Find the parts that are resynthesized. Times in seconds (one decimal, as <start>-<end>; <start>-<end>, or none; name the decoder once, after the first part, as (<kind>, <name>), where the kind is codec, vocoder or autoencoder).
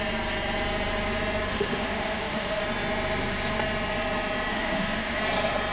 1.5-2.6 (autoencoder, DAC-VAE); 4.5-5.2